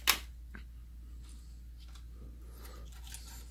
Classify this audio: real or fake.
real